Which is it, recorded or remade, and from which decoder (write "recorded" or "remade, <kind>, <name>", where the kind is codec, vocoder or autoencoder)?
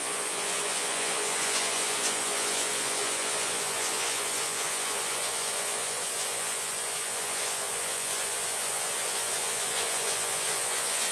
remade, vocoder, Vocos